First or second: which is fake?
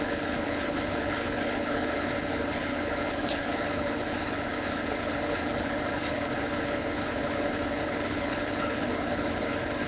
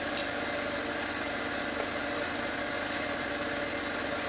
first